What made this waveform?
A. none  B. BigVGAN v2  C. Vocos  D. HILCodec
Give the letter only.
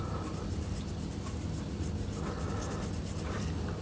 A